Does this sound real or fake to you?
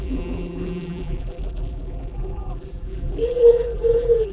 fake